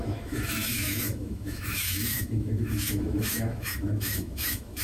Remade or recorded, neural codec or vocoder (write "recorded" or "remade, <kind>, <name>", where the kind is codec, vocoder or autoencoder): remade, autoencoder, DAC-VAE